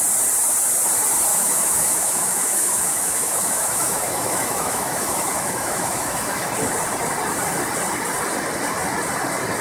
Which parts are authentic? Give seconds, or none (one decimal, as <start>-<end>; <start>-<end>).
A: 0.0-1.3; 6.5-9.6